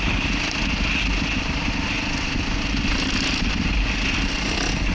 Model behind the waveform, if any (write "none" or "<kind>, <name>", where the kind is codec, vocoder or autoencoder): none